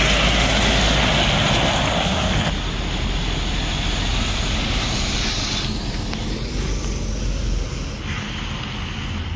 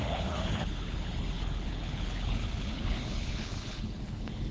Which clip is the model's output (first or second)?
second